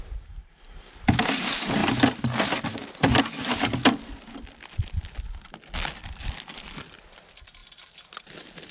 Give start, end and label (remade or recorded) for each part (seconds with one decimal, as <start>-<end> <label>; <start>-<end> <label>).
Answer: 0.0-8.7 recorded